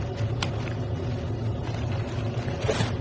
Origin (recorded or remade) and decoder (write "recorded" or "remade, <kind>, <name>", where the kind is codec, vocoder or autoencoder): recorded